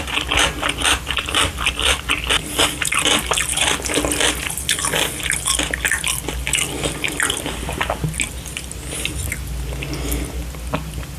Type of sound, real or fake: real